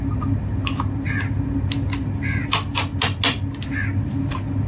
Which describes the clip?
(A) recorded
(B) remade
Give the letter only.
A